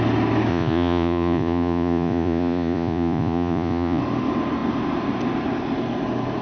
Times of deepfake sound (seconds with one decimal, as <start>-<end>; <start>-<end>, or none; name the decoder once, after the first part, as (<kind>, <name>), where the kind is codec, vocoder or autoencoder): 0.5-4.0 (vocoder, Vocos)